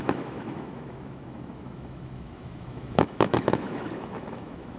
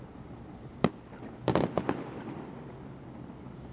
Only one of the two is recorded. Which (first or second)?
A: second